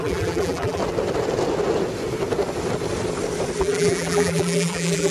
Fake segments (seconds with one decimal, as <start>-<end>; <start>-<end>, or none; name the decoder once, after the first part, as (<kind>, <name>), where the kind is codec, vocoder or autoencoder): 0.0-0.8 (vocoder, BigVGAN v2); 3.6-5.1